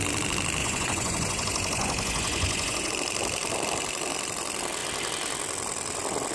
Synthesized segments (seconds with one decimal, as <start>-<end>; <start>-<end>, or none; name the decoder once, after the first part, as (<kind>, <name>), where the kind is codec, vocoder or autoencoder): 0.6-2.9 (vocoder, Vocos)